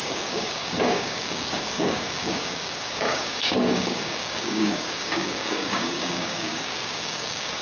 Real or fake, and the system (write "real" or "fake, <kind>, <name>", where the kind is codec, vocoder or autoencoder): fake, codec, DAC